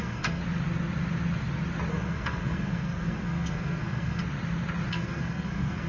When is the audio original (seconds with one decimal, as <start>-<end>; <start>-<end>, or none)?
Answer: 0.4-1.9; 4.2-4.9